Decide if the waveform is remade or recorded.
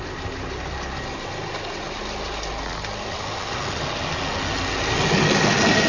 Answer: recorded